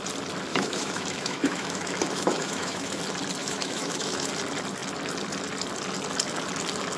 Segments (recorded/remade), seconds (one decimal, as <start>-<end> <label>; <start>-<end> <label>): 0.0-0.5 recorded; 0.5-3.0 remade; 3.0-3.4 recorded; 3.4-4.3 remade; 4.3-7.0 recorded